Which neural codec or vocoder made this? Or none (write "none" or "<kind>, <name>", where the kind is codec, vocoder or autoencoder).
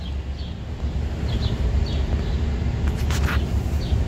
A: none